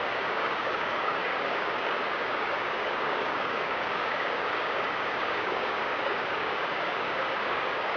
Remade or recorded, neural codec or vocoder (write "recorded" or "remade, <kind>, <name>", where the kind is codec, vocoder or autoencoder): remade, codec, DAC